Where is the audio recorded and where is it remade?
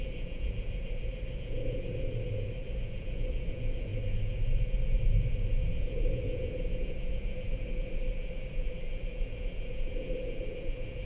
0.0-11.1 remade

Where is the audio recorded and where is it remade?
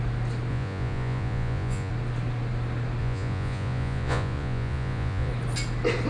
0.0-0.5 recorded; 0.5-1.9 remade; 1.9-3.0 recorded; 3.0-5.3 remade; 5.3-6.1 recorded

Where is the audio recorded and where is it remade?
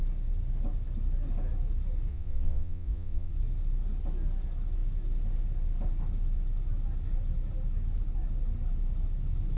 0.0-2.1 recorded; 2.1-3.3 remade; 3.3-9.6 recorded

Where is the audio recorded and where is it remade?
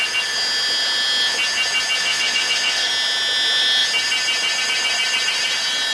0.0-2.0 recorded; 2.0-2.9 remade; 2.9-5.9 recorded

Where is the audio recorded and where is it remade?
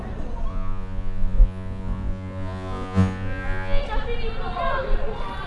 0.0-0.5 recorded; 0.5-3.8 remade; 3.8-5.5 recorded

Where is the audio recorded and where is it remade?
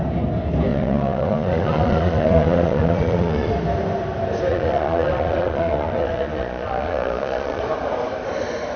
0.0-0.7 recorded; 0.7-3.5 remade; 3.5-4.5 recorded; 4.5-7.6 remade; 7.6-8.8 recorded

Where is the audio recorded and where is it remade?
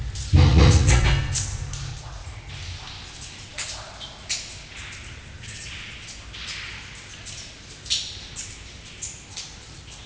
0.0-0.5 recorded; 0.5-1.0 remade; 1.0-1.9 recorded; 1.9-2.5 remade; 2.5-10.1 recorded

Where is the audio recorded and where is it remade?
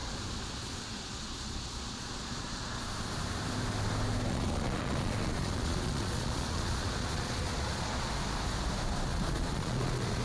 0.0-2.8 remade; 2.8-4.3 recorded; 4.3-8.1 remade; 8.1-9.1 recorded; 9.1-10.2 remade